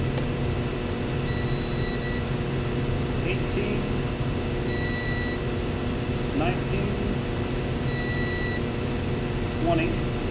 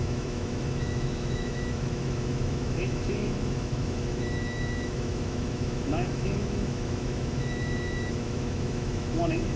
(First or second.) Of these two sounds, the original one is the first